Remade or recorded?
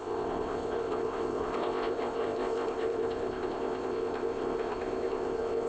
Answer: remade